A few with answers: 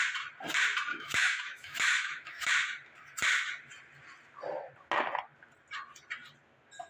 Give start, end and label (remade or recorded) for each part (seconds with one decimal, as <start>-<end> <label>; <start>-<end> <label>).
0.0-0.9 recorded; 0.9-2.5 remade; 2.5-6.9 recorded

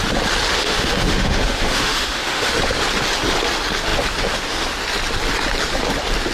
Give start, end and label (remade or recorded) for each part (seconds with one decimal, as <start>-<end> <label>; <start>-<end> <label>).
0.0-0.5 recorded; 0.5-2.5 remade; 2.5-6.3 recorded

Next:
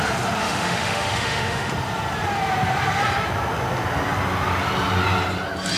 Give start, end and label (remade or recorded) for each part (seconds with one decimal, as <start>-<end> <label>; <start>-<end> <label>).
0.0-0.4 recorded; 0.4-1.7 remade; 1.7-5.8 recorded

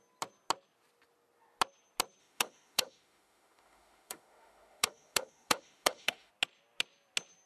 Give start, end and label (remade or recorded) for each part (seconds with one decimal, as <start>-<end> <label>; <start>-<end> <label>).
0.0-2.2 recorded; 2.2-6.3 remade; 6.3-7.5 recorded

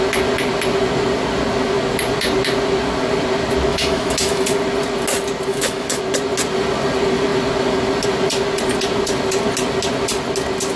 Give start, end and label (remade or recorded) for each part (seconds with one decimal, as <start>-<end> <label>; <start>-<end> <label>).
0.0-3.7 recorded; 3.7-4.5 remade; 4.5-5.5 recorded; 5.5-6.0 remade; 6.0-10.8 recorded

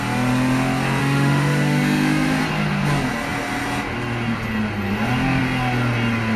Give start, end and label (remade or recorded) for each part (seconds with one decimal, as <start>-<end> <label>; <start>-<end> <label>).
0.0-1.0 recorded; 1.0-2.4 remade; 2.4-6.4 recorded